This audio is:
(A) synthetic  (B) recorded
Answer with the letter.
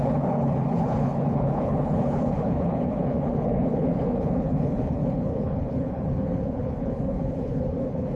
A